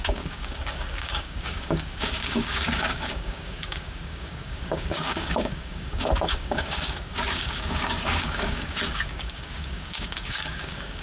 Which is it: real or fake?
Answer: fake